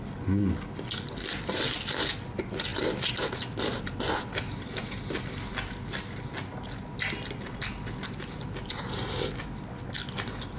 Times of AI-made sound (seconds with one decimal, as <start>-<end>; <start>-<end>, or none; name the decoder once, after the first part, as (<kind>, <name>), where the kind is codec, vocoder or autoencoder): none